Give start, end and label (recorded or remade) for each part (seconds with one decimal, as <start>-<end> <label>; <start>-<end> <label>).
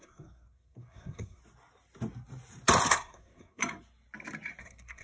0.0-1.4 remade; 1.4-2.9 recorded; 2.9-3.6 remade; 3.6-4.6 recorded; 4.6-5.0 remade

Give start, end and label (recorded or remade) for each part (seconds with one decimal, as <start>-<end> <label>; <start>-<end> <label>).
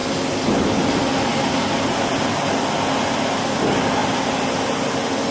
0.0-5.3 recorded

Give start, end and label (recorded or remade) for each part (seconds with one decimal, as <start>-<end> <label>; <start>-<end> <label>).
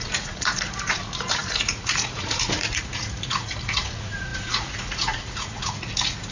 0.0-6.3 remade